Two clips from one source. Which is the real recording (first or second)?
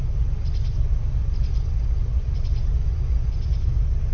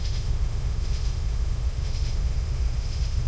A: first